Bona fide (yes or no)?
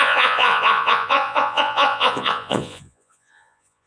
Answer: no